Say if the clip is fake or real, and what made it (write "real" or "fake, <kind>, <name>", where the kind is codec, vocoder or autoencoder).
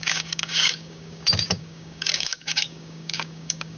fake, codec, DAC